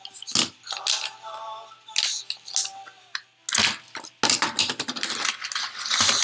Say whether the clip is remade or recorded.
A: recorded